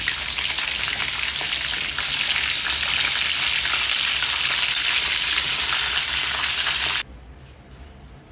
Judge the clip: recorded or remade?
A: recorded